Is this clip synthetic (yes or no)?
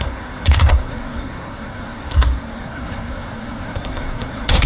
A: yes